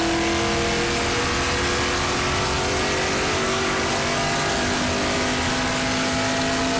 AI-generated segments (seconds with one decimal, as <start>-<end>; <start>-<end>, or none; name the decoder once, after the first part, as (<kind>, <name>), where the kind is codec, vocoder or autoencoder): 3.3-3.9 (codec, DAC)

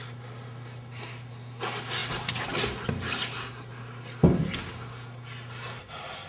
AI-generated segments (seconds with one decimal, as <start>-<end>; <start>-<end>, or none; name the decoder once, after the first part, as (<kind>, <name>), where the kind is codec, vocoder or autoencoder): none

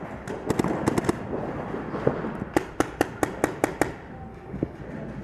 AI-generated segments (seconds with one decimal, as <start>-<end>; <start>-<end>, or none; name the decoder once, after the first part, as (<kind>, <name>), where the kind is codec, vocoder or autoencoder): 4.3-4.8 (codec, DAC)

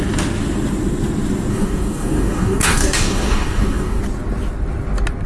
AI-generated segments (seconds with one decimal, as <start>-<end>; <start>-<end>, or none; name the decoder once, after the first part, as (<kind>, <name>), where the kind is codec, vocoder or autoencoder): 1.5-4.0 (codec, DAC)

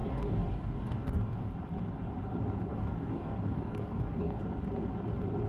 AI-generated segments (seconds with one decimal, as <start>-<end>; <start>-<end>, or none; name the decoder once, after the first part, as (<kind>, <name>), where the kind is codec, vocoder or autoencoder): 0.0-1.5 (codec, DAC); 2.7-4.4

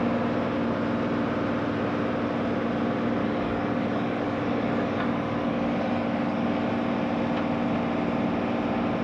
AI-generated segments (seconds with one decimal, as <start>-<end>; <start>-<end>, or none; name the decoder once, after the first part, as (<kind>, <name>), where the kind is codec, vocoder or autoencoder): 3.2-6.7 (codec, DAC)